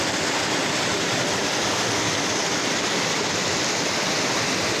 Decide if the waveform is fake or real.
real